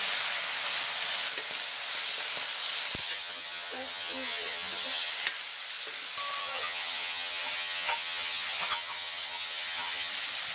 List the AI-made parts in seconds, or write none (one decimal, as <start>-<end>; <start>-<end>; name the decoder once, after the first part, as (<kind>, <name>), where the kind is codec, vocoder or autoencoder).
3.0-5.1 (vocoder, HiFi-GAN); 6.4-10.1